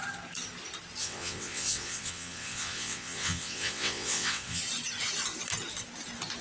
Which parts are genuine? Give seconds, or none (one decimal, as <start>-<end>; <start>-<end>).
0.0-1.0; 4.6-6.4